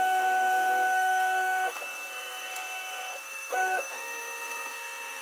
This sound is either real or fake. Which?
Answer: fake